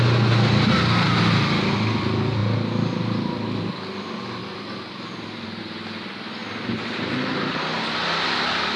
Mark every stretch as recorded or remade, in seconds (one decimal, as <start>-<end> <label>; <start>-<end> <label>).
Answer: 0.0-2.4 recorded; 2.4-3.0 remade; 3.0-4.4 recorded; 4.4-5.6 remade; 5.6-6.4 recorded; 6.4-7.8 remade; 7.8-8.8 recorded